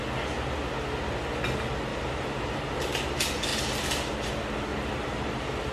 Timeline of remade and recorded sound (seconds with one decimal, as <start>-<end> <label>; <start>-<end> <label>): 0.0-1.9 recorded; 1.9-2.5 remade; 2.5-4.7 recorded; 4.7-5.7 remade